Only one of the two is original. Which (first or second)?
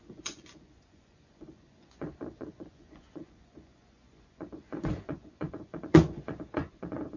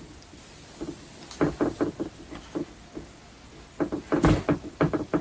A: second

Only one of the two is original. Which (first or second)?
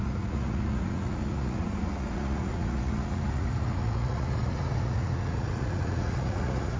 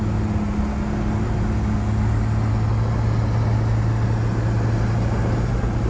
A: second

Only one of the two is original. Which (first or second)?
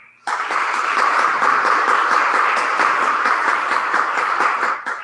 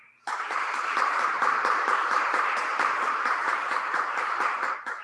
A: first